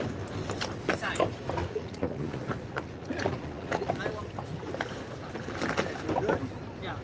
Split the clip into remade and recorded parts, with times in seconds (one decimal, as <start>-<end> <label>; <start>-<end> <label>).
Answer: 0.0-1.6 recorded; 1.6-3.9 remade; 3.9-7.0 recorded